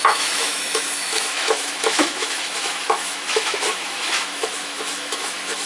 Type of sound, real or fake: fake